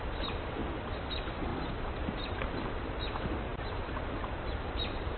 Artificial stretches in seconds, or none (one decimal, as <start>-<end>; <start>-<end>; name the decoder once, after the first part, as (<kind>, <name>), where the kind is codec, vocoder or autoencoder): 0.0-0.6 (vocoder, BigVGAN v2); 1.1-5.2